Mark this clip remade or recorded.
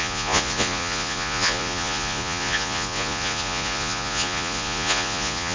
remade